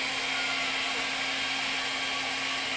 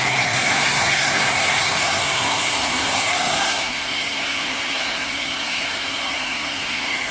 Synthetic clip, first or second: second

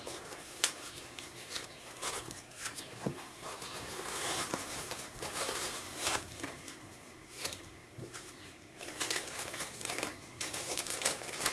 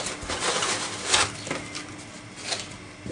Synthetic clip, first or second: first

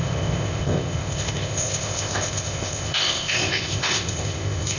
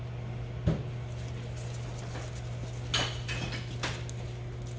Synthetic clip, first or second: first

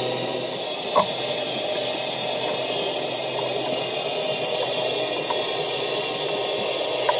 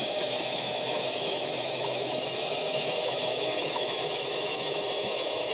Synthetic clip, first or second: second